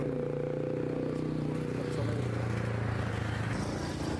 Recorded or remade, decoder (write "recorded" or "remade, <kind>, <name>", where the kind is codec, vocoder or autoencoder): recorded